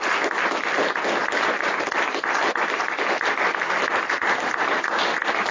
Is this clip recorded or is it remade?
recorded